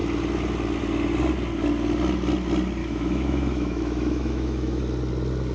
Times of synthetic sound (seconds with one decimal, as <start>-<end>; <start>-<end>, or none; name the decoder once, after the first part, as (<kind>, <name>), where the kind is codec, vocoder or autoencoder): 2.8-4.8 (autoencoder, DAC-VAE)